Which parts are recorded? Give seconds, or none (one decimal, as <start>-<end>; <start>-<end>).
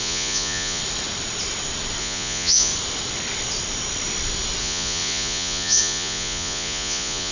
0.8-2.0; 2.7-4.6